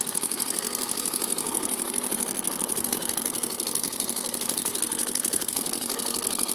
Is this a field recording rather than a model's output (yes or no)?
no